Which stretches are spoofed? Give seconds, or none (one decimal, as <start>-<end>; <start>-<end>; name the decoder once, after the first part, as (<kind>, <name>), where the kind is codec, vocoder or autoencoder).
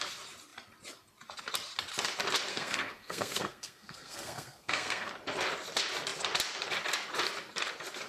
2.5-5.1 (codec, SNAC)